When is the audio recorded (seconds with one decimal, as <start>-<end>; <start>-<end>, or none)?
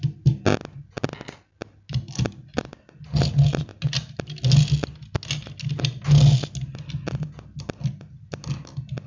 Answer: 0.0-9.1